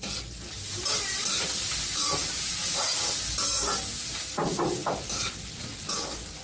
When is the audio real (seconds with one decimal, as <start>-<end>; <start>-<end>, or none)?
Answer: 0.0-6.4